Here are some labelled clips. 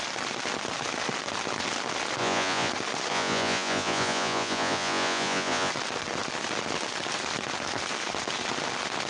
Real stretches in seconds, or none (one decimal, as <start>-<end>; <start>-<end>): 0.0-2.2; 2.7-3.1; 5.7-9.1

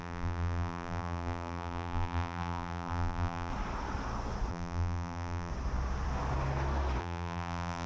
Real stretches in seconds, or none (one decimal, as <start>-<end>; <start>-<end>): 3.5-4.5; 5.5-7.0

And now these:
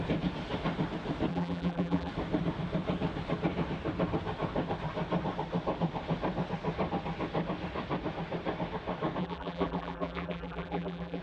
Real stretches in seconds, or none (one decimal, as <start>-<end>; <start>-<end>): 0.0-1.3; 2.1-9.2